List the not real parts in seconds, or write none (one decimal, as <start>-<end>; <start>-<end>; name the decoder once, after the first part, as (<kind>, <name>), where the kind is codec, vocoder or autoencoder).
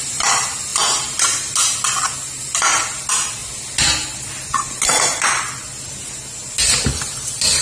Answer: none